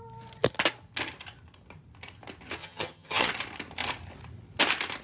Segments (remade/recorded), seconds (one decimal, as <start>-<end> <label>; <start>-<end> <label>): 0.0-2.6 recorded; 2.6-3.3 remade; 3.3-5.0 recorded